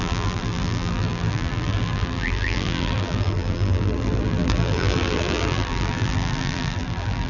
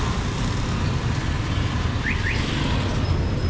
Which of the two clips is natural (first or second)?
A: second